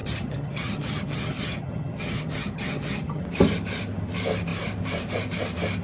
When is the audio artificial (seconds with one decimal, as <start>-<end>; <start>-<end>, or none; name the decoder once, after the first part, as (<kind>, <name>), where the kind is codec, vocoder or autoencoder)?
0.0-3.2 (vocoder, HiFi-GAN)